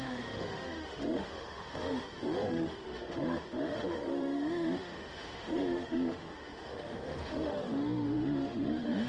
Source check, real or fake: fake